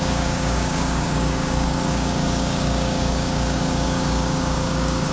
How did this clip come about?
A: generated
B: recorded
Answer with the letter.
A